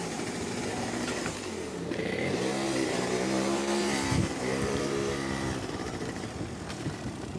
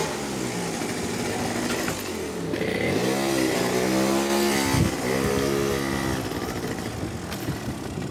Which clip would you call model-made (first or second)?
first